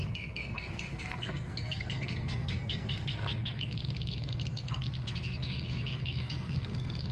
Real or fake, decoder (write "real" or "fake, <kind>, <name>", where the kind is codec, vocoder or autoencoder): fake, codec, SNAC